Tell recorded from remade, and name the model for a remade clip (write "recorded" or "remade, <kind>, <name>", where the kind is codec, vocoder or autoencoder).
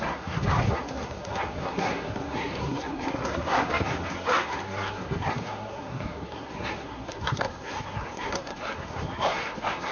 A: remade, codec, SNAC